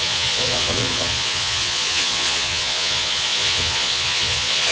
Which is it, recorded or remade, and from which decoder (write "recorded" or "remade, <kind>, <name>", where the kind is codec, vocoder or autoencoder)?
remade, vocoder, Vocos